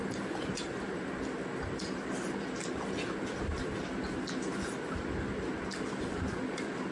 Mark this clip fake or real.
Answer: real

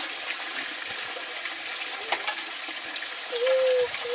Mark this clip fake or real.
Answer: real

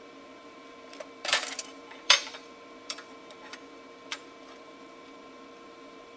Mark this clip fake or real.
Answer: fake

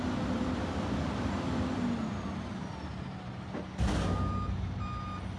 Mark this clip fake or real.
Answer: real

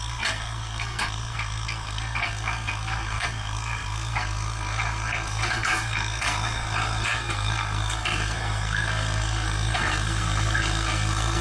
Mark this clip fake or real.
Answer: fake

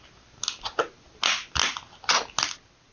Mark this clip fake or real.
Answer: real